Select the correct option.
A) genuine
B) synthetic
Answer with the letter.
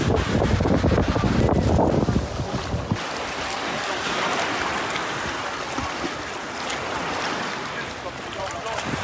A